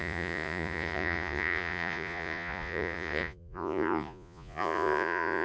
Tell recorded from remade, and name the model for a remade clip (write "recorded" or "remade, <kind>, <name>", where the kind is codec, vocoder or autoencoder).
remade, vocoder, Vocos